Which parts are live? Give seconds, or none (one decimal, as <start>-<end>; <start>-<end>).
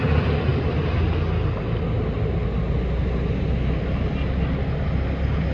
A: 0.0-5.5